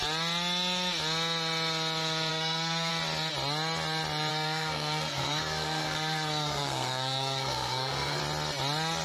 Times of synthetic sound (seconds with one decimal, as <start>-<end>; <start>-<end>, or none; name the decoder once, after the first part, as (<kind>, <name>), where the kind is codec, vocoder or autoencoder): 2.3-2.9 (codec, SNAC); 4.3-8.2